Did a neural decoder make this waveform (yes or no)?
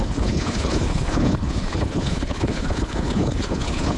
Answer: yes